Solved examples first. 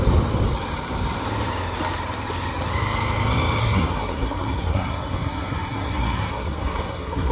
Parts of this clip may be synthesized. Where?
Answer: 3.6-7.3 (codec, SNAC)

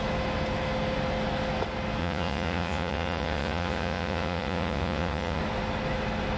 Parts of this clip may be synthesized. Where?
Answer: 2.0-5.4 (vocoder, Vocos)

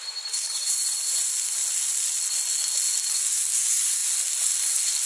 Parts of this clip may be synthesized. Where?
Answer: none

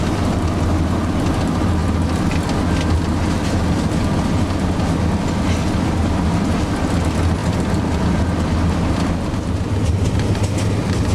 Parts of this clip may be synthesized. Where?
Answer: none

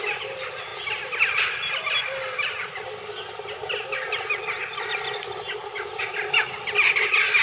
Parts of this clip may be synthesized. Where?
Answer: none

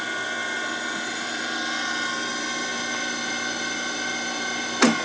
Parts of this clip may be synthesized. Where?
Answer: none

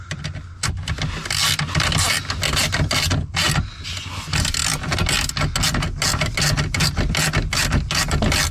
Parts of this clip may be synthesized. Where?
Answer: none

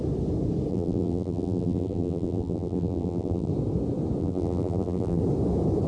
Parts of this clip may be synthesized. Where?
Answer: 0.7-3.5 (vocoder, BigVGAN v2); 4.2-5.2